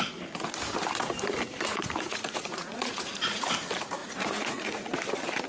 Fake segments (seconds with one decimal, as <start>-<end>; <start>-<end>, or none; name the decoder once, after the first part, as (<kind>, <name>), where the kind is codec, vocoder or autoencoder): 1.7-3.5 (vocoder, Vocos); 4.0-5.0

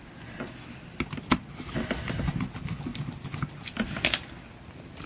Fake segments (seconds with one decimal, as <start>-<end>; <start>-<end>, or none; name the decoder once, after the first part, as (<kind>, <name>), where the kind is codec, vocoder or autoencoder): none

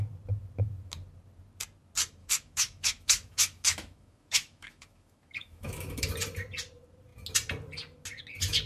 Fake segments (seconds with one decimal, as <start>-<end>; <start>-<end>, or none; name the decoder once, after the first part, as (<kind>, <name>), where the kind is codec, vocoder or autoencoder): 2.2-6.0 (autoencoder, DAC-VAE)

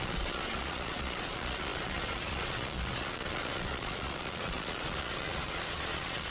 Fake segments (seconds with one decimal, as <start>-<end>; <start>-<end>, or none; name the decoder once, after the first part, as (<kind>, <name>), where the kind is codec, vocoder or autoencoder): 0.0-6.3 (vocoder, Vocos)